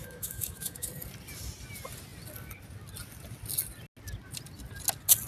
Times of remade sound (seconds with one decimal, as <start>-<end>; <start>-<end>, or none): 0.0-0.9